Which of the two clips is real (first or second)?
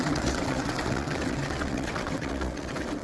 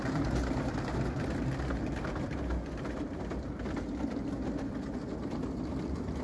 second